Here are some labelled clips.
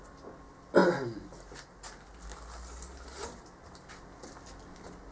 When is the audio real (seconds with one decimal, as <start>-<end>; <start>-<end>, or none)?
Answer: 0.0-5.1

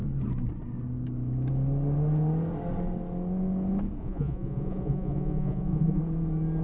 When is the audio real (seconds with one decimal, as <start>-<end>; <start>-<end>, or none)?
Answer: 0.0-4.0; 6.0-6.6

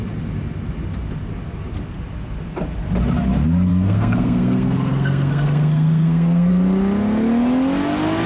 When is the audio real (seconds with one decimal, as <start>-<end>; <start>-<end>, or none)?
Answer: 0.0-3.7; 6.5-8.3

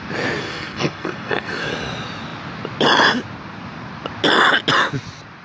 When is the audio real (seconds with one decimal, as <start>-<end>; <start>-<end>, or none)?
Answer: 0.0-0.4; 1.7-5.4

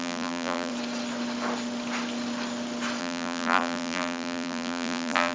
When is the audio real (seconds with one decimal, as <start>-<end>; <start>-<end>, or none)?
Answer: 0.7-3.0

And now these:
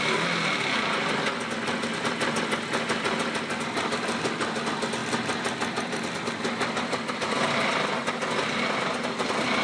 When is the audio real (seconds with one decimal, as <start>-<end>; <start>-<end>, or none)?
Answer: 0.0-9.6

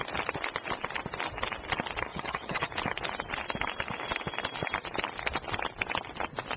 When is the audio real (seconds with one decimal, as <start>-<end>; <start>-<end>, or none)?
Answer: 0.0-2.1; 2.7-6.6